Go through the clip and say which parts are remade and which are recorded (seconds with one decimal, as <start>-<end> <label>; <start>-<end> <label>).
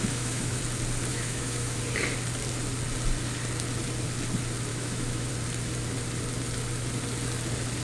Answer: 0.0-0.6 remade; 0.6-1.1 recorded; 1.1-1.8 remade; 1.8-4.7 recorded; 4.7-5.3 remade; 5.3-7.8 recorded